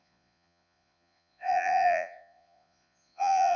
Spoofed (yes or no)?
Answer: yes